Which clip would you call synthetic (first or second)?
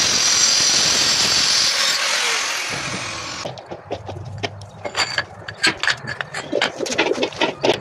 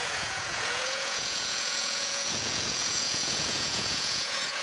second